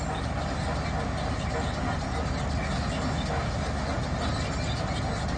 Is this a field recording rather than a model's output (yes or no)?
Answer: yes